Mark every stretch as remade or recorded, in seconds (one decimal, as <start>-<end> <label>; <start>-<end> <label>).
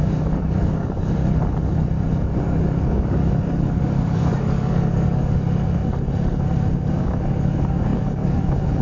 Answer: 0.0-1.2 remade; 1.2-2.4 recorded; 2.4-5.8 remade; 5.8-6.9 recorded; 6.9-8.8 remade